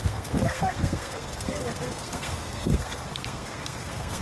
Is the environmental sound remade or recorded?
remade